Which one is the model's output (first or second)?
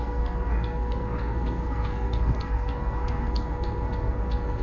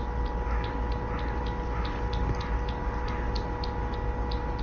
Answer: first